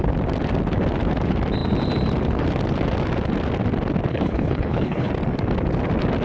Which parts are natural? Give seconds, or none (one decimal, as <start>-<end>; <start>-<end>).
0.0-4.1; 5.1-6.2